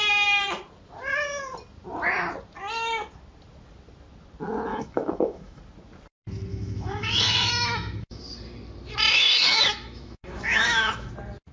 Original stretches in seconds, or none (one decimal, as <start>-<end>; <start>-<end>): 0.0-4.7; 5.6-6.5; 8.2-9.1; 11.1-11.5